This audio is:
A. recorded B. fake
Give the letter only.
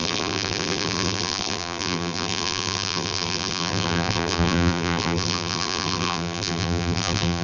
B